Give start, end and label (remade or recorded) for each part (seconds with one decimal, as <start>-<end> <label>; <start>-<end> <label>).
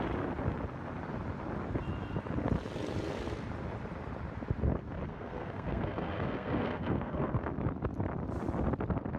0.0-5.1 recorded; 5.1-7.6 remade; 7.6-9.2 recorded